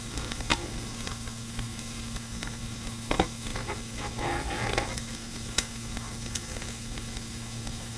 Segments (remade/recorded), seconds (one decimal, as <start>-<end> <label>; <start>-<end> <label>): 0.0-8.0 remade